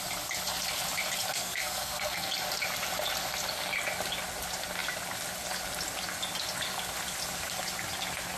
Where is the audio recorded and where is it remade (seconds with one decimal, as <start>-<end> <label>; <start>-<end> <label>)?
0.0-1.3 recorded; 1.3-2.3 remade; 2.3-8.4 recorded